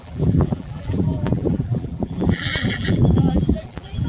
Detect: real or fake fake